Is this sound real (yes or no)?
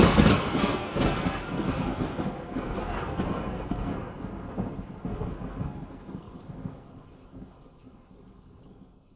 no